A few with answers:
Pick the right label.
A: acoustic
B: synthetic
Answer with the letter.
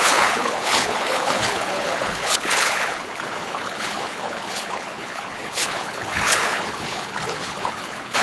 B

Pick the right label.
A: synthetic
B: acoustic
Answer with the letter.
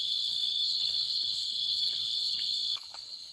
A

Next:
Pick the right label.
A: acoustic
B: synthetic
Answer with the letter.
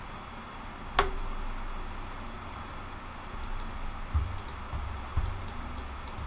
A